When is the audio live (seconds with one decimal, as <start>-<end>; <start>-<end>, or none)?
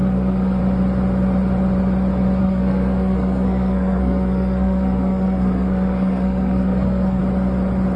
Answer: 0.6-2.4; 7.2-8.0